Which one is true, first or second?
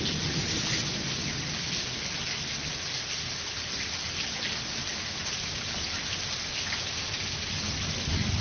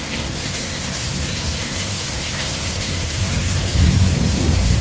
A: first